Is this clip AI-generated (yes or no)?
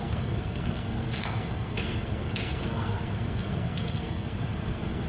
yes